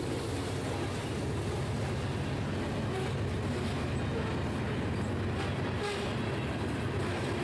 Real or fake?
real